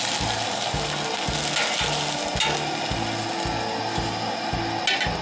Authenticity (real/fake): real